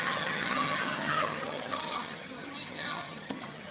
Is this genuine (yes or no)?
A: no